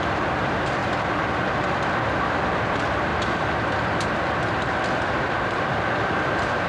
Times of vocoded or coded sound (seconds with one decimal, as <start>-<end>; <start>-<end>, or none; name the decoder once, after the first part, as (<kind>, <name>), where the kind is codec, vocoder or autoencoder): 0.0-0.8 (vocoder, BigVGAN v2); 2.7-3.1; 5.4-6.7